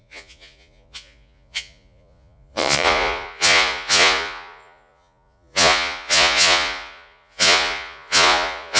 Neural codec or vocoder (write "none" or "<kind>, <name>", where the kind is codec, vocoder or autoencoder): vocoder, Vocos